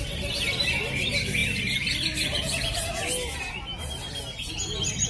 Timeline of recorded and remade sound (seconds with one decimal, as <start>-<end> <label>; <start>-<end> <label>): 0.0-5.1 recorded

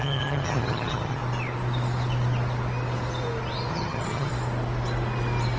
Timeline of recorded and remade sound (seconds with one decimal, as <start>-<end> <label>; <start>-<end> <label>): 0.0-1.2 remade; 1.2-3.7 recorded; 3.7-4.3 remade; 4.3-5.6 recorded

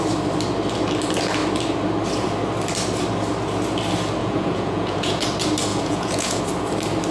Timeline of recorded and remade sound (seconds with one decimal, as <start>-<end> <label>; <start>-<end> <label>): 0.0-4.2 recorded; 4.2-5.2 remade; 5.2-5.7 recorded; 5.7-6.4 remade; 6.4-7.1 recorded

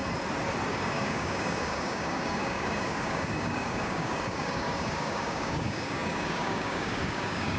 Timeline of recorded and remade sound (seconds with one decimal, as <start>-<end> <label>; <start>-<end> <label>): 0.0-0.7 recorded; 0.7-7.6 remade

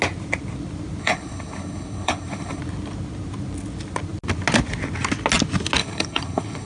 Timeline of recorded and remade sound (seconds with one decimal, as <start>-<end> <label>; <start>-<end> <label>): 0.0-1.0 recorded; 1.0-2.6 remade; 2.6-5.8 recorded; 5.8-6.7 remade

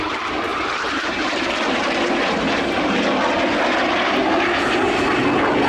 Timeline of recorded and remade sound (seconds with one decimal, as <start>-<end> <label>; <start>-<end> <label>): 0.0-0.5 recorded; 0.5-2.6 remade; 2.6-5.7 recorded

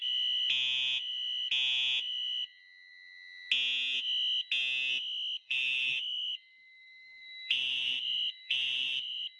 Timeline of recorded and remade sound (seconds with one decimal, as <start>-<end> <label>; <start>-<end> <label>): 0.0-5.4 recorded; 5.4-9.4 remade